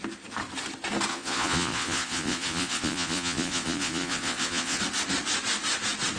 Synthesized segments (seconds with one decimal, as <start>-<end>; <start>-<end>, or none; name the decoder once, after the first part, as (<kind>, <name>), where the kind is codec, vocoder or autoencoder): 1.1-4.8 (vocoder, Vocos)